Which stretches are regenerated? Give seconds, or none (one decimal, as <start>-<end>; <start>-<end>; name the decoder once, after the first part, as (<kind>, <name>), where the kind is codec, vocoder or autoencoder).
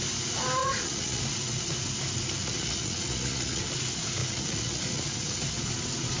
0.6-1.2 (vocoder, Vocos); 2.4-3.6; 4.2-5.4